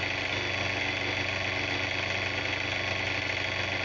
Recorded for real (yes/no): yes